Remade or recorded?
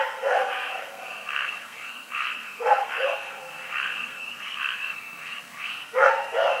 remade